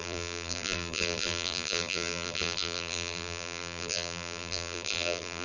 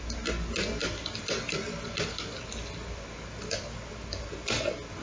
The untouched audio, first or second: second